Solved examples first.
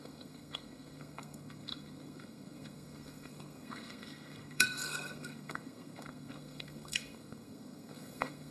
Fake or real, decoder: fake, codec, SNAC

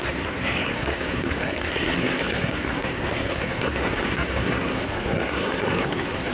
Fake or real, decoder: fake, codec, SNAC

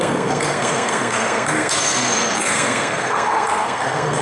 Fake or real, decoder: fake, codec, SNAC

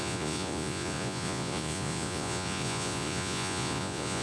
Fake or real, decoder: fake, vocoder, Vocos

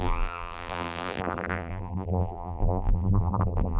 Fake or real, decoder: fake, vocoder, BigVGAN v2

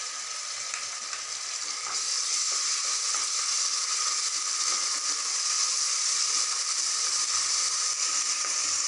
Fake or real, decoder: real